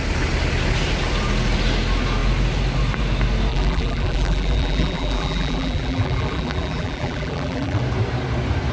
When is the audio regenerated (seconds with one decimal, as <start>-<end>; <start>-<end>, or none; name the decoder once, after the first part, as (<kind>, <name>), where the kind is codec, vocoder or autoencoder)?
3.5-7.8 (vocoder, BigVGAN v2)